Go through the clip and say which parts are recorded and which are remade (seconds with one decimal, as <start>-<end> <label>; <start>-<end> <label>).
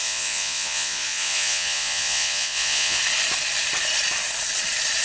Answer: 0.0-3.0 remade; 3.0-5.0 recorded